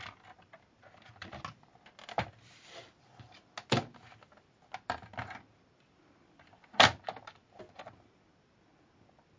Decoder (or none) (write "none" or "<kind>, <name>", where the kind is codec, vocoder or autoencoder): none